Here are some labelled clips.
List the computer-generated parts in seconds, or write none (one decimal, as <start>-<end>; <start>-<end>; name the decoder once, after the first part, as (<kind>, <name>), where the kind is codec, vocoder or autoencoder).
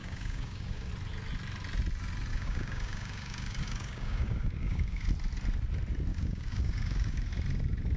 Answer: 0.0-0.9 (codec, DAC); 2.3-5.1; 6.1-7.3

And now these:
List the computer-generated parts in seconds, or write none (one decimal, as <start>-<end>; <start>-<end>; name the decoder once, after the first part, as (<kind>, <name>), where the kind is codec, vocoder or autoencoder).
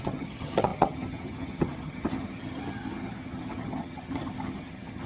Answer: 0.0-5.1 (vocoder, HiFi-GAN)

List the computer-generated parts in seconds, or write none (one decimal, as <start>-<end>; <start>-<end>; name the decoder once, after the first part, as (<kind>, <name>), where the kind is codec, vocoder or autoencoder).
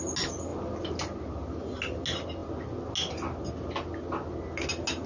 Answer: none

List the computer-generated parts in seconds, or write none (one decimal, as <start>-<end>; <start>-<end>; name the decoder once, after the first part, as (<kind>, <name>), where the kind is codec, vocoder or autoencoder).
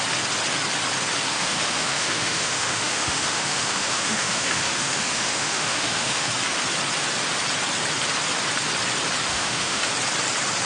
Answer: 1.3-6.3 (autoencoder, DAC-VAE); 9.3-9.9